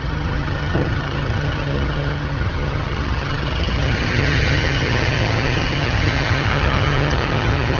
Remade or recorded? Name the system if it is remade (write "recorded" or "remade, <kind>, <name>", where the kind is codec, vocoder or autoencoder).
remade, vocoder, HiFi-GAN